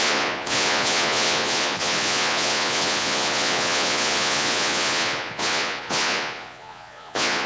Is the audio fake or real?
fake